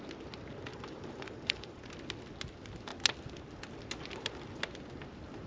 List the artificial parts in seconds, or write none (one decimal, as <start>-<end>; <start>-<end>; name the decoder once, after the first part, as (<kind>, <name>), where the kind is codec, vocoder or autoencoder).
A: 0.7-1.8 (vocoder, BigVGAN v2)